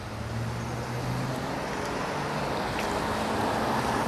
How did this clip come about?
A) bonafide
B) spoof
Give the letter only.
A